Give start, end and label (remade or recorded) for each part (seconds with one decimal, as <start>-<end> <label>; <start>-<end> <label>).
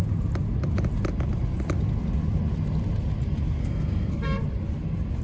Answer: 0.0-3.6 recorded; 3.6-4.2 remade; 4.2-5.2 recorded